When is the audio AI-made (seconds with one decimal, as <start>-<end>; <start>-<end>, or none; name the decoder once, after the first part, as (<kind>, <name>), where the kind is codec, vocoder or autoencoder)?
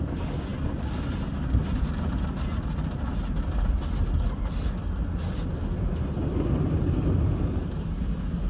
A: none